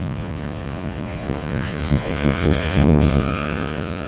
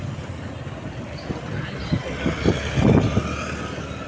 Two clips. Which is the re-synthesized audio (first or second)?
first